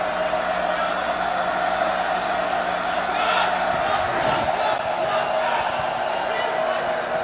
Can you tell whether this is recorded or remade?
recorded